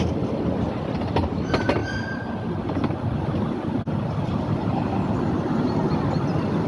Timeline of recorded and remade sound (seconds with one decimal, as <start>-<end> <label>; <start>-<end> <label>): 0.0-6.7 recorded